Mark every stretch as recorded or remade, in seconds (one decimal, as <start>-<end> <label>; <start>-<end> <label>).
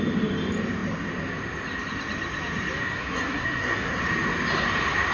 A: 0.0-2.8 recorded; 2.8-4.0 remade; 4.0-5.1 recorded